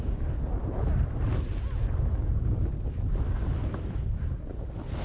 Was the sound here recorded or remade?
recorded